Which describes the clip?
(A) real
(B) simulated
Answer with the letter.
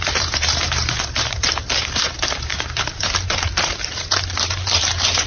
B